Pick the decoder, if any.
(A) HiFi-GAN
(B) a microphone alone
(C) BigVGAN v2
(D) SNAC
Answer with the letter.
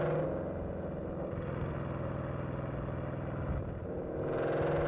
B